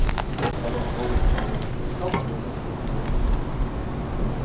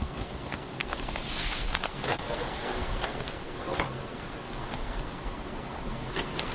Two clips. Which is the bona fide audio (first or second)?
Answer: first